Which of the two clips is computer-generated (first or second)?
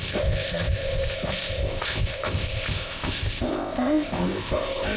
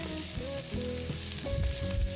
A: first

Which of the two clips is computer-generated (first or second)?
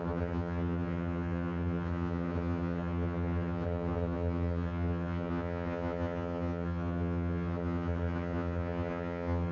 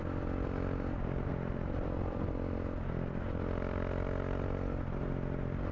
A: first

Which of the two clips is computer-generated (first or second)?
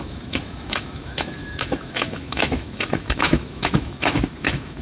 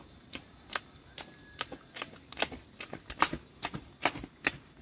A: first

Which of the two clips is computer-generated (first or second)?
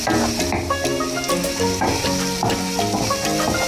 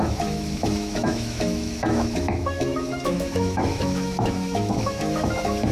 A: second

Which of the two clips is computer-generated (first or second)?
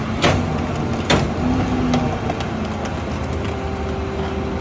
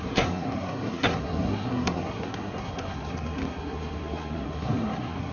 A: second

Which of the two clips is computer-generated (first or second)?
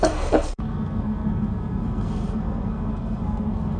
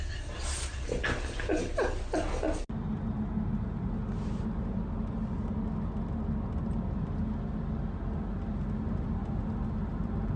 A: first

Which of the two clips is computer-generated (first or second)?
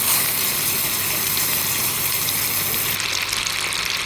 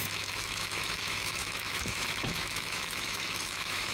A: second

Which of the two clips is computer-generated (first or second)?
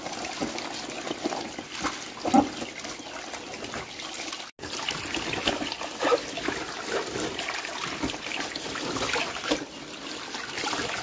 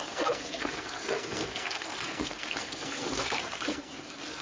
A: second